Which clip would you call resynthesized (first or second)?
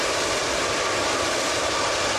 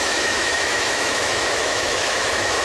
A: second